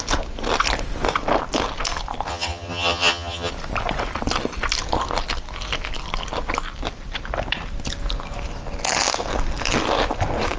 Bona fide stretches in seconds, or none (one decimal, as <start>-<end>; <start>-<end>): 0.0-2.3; 3.5-10.6